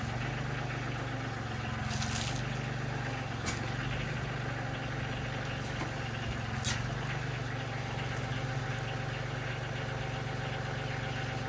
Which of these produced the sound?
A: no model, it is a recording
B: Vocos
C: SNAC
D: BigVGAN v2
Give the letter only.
A